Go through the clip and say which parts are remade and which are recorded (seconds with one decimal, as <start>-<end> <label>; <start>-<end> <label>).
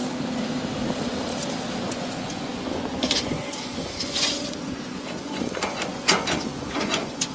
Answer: 0.0-1.8 recorded; 1.8-7.3 remade